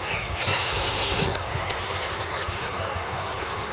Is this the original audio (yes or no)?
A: no